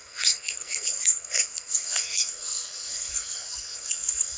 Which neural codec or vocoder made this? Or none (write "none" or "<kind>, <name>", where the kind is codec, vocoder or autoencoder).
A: codec, SNAC